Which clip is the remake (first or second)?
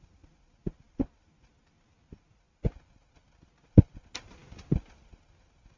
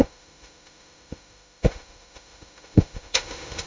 second